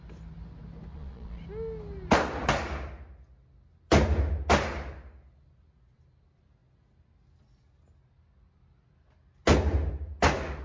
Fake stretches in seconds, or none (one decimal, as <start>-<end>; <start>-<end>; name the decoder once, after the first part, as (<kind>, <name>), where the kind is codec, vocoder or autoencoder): 0.9-1.4 (vocoder, Vocos)